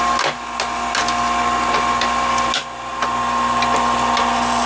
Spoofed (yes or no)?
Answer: no